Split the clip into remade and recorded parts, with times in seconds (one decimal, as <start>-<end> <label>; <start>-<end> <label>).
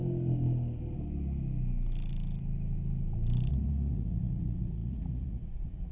0.0-3.5 recorded; 3.5-5.9 remade